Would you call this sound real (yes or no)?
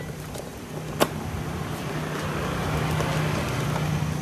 yes